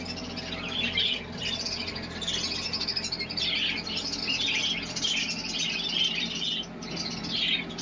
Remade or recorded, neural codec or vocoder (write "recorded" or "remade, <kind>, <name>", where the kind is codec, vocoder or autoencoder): recorded